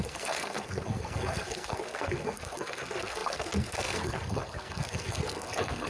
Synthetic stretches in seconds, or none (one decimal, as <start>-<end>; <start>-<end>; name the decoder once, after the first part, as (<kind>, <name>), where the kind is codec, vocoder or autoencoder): 0.0-5.9 (codec, SNAC)